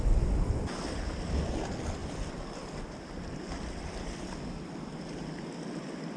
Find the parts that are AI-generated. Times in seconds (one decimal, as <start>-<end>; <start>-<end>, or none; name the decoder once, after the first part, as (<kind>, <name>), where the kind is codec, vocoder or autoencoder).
none

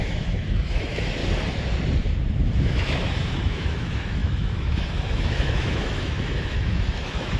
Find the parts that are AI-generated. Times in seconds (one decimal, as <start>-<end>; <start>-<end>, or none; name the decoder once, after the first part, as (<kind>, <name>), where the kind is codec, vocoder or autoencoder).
0.0-1.2 (autoencoder, DAC-VAE); 2.6-7.4

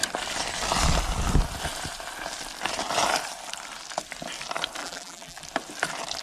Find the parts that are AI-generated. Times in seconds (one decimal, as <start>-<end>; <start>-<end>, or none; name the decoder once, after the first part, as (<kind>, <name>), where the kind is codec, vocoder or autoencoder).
4.8-5.4 (vocoder, BigVGAN v2)

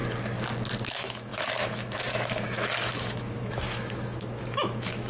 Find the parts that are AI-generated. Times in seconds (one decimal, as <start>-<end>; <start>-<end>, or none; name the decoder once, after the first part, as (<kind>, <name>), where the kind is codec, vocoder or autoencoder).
0.9-5.1 (autoencoder, DAC-VAE)

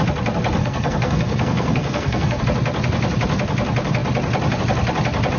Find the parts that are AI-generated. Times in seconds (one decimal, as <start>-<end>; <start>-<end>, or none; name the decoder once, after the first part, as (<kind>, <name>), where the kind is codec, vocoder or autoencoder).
0.6-2.4 (codec, SNAC)

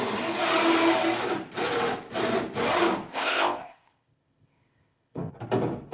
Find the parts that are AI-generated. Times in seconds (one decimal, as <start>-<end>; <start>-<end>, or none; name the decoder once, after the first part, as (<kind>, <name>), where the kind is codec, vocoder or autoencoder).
3.1-5.3 (codec, ZipCodec)

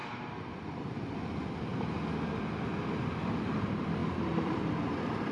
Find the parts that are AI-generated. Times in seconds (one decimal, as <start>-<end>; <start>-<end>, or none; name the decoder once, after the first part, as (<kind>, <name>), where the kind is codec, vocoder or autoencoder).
0.0-1.1 (vocoder, BigVGAN v2); 4.0-4.6